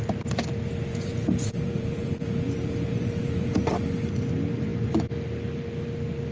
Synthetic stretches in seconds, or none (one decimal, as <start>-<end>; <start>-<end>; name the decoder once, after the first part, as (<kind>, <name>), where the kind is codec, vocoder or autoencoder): 0.9-3.6 (vocoder, Vocos)